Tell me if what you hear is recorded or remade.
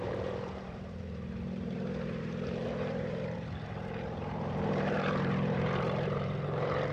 remade